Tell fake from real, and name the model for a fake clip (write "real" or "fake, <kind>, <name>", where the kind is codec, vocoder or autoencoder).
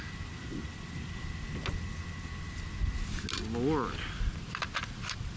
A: real